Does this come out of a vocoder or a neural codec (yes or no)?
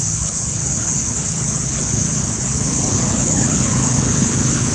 yes